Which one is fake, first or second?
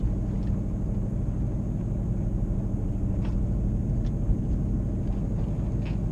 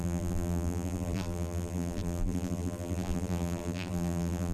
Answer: second